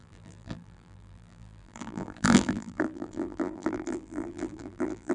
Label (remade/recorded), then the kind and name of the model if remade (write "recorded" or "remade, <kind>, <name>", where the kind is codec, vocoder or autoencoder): remade, vocoder, BigVGAN v2